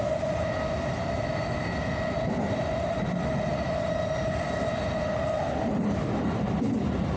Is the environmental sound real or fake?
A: real